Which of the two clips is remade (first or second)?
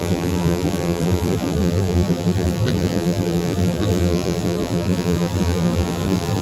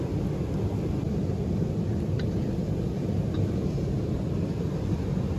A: first